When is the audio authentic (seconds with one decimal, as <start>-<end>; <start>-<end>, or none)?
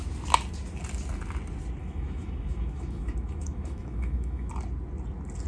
0.0-1.8; 4.5-5.5